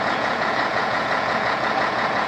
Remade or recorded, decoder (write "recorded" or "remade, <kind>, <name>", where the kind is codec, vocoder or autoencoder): remade, vocoder, Vocos